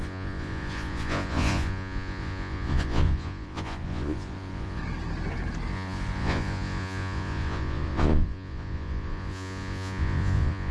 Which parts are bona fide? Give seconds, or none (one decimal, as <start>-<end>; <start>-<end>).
4.8-5.7